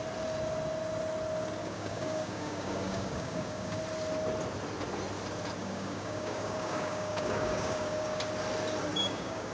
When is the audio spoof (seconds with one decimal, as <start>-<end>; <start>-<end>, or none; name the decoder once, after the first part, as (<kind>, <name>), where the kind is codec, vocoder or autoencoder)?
1.6-3.8 (codec, DAC); 5.6-8.2; 8.9-9.5